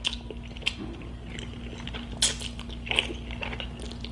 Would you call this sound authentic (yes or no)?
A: yes